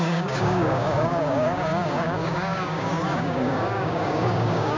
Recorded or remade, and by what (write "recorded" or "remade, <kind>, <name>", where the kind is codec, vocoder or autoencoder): remade, codec, DAC